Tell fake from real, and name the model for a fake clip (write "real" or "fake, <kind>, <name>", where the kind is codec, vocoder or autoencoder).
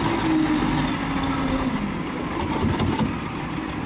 real